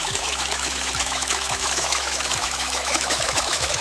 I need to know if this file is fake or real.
fake